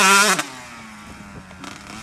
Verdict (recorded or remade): recorded